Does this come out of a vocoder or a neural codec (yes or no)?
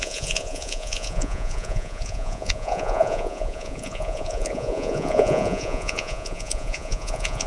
yes